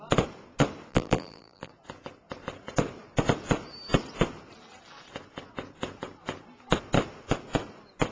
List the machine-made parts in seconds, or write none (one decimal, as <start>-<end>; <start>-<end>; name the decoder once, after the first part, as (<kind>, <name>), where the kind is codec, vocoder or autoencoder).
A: 0.9-1.7 (vocoder, BigVGAN v2)